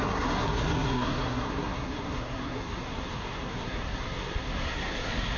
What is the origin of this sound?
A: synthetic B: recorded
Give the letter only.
A